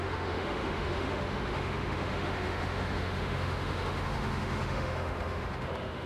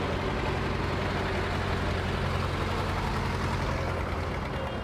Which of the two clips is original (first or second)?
second